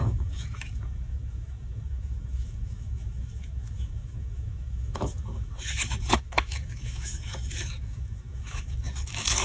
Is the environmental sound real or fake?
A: fake